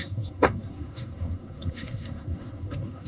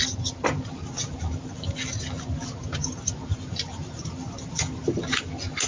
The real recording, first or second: second